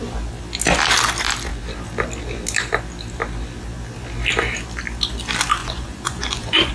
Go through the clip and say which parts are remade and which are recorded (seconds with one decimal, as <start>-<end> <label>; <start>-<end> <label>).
0.0-5.6 recorded; 5.6-6.7 remade